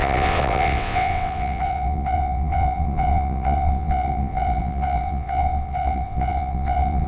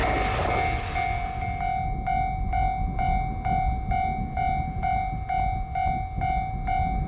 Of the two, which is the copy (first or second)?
first